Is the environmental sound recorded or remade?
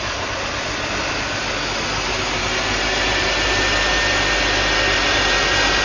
recorded